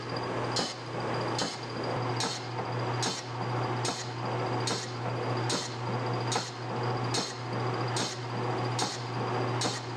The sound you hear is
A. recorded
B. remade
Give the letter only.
A